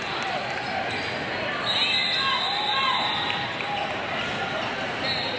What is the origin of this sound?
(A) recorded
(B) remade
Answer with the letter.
A